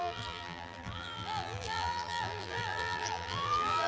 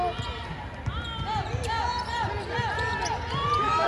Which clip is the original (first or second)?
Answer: second